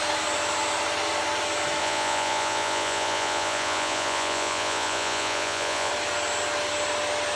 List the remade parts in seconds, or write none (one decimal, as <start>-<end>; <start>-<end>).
1.8-5.9